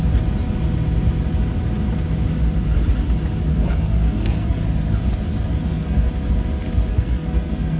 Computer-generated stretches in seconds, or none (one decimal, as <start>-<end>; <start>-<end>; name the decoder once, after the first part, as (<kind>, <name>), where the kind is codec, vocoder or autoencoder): 3.5-4.6 (codec, SNAC); 5.6-6.1; 6.9-7.8